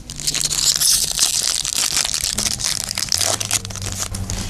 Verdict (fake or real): real